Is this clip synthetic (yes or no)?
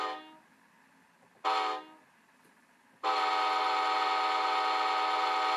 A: no